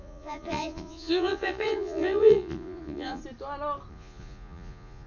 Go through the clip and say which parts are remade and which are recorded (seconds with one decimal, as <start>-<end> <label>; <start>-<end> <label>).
0.0-3.2 remade; 3.2-3.9 recorded; 3.9-5.1 remade